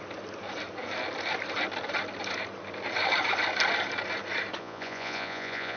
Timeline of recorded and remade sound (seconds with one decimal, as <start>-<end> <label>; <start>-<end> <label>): 0.0-4.6 recorded; 4.6-5.8 remade